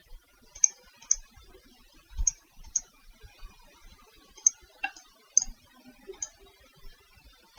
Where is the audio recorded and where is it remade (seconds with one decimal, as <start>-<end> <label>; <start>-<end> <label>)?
0.0-1.7 recorded; 1.7-4.5 remade; 4.5-7.6 recorded